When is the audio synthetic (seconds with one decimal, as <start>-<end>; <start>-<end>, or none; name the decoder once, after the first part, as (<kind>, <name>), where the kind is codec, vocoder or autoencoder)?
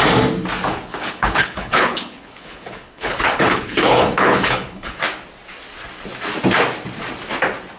0.7-5.0 (codec, HILCodec)